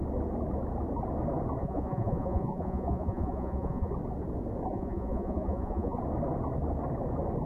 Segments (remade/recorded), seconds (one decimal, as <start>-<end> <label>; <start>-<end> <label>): 0.0-1.6 recorded; 1.6-3.9 remade; 3.9-4.7 recorded; 4.7-6.0 remade; 6.0-7.5 recorded